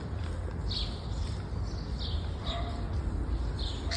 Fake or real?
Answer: real